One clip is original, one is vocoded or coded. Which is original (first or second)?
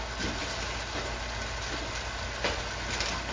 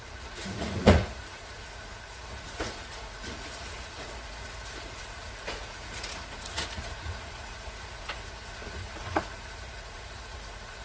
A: first